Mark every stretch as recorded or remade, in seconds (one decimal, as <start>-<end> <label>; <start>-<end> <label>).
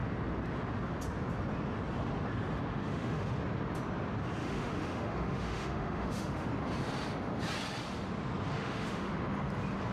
0.0-2.7 recorded; 2.7-3.4 remade; 3.4-4.4 recorded; 4.4-6.5 remade; 6.5-8.5 recorded; 8.5-9.1 remade; 9.1-9.9 recorded